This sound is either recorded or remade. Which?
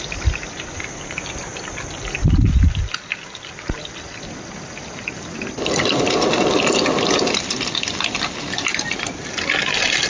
recorded